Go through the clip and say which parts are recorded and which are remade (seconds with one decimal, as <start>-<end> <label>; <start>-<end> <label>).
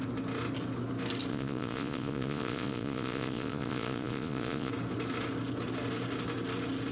0.0-1.3 recorded; 1.3-4.7 remade; 4.7-6.9 recorded